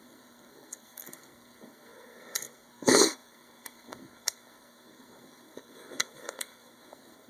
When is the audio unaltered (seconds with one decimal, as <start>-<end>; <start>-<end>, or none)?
none